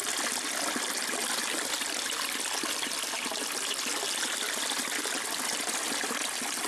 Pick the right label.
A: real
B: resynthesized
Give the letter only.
A